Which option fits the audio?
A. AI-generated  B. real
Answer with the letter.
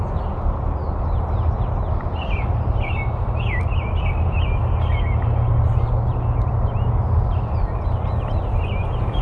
B